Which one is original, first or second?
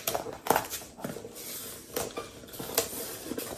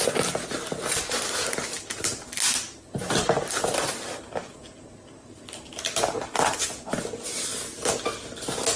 second